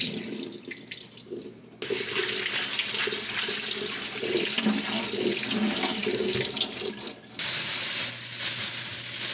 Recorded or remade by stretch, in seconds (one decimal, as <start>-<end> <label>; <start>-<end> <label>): 0.0-9.3 recorded